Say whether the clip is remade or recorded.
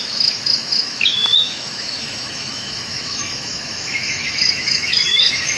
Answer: remade